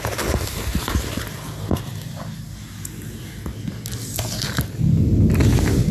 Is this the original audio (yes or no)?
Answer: yes